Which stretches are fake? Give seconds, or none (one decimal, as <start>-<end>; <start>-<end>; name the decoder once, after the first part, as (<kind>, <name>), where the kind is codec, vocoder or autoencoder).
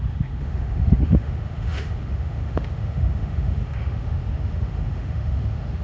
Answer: 0.0-5.8 (autoencoder, DAC-VAE)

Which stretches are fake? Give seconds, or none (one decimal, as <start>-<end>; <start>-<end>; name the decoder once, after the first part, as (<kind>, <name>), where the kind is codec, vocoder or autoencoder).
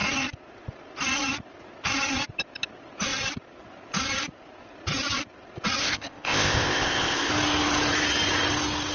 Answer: 5.8-7.3 (codec, ZipCodec)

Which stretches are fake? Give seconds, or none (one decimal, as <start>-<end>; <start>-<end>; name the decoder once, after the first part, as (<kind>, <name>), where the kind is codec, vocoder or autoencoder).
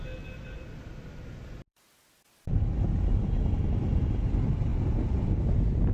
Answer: 4.7-5.4 (vocoder, Vocos)